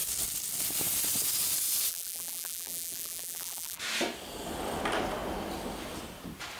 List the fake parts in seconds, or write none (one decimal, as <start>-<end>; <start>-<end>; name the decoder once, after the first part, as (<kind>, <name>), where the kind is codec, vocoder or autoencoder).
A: 1.9-3.8 (vocoder, BigVGAN v2)